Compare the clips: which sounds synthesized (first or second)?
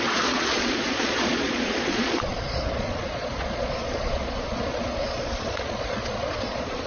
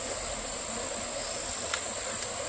first